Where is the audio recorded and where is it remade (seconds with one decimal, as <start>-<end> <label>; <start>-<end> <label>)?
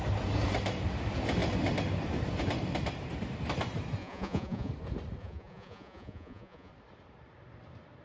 0.0-4.0 recorded; 4.0-4.7 remade; 4.7-5.2 recorded; 5.2-6.7 remade; 6.7-8.0 recorded